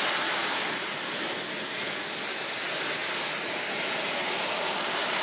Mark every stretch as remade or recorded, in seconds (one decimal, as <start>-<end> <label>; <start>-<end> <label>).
0.0-5.2 recorded